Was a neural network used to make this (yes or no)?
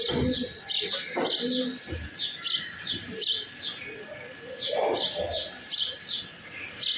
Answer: no